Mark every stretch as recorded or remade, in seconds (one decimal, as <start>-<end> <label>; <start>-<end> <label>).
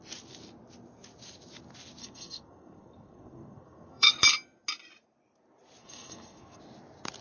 0.0-2.0 recorded; 2.0-4.1 remade; 4.1-5.8 recorded; 5.8-6.6 remade; 6.6-7.2 recorded